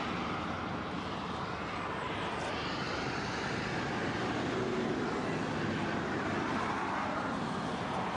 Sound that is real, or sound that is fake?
real